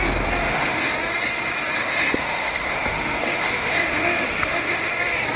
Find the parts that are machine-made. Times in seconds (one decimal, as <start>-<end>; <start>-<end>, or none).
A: 0.4-0.9; 1.8-4.9